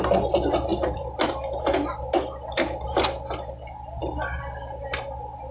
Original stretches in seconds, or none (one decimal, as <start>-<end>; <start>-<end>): 0.0-0.7; 1.3-5.5